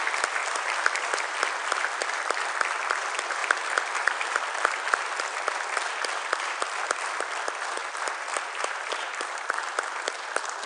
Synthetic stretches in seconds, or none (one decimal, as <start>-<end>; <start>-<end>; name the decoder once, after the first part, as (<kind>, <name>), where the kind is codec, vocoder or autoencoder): 0.4-1.0 (vocoder, BigVGAN v2); 3.4-5.0; 7.8-9.6